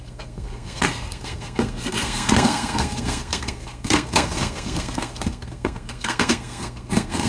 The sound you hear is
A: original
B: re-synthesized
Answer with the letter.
B